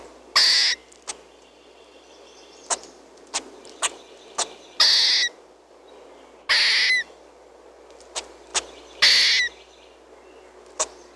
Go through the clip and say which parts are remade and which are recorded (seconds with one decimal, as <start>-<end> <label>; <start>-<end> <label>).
0.0-11.2 recorded